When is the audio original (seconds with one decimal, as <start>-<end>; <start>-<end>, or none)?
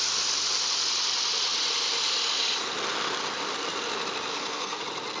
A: 0.0-4.3; 4.8-5.2